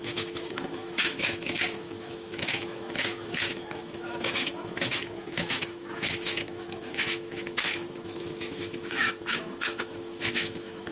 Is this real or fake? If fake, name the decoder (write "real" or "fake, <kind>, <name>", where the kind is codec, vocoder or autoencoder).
fake, autoencoder, DAC-VAE